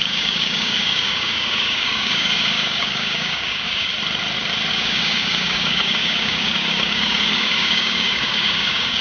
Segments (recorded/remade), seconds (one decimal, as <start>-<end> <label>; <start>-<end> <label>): 0.0-3.9 remade; 3.9-4.7 recorded; 4.7-9.0 remade